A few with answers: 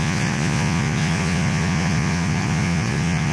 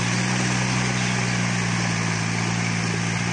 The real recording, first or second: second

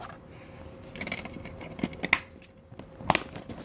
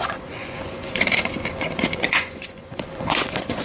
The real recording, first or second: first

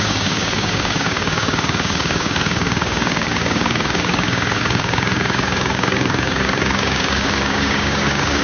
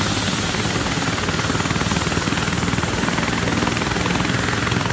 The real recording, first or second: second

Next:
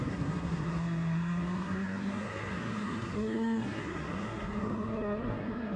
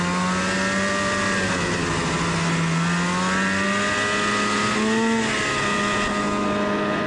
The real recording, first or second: second